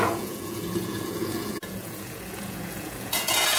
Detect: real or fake fake